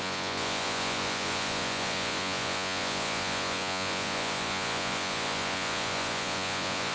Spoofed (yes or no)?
yes